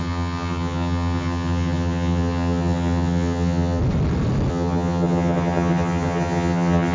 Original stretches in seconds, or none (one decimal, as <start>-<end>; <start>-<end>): 3.8-4.5